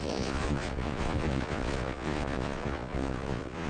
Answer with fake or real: fake